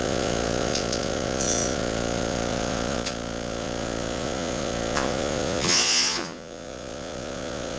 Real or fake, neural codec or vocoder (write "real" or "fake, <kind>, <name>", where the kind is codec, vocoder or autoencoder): fake, vocoder, Vocos